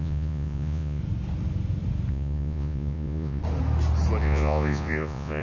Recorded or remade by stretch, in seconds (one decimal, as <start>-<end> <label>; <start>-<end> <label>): 0.0-1.0 remade; 1.0-2.1 recorded; 2.1-3.4 remade; 3.4-4.2 recorded; 4.2-5.4 remade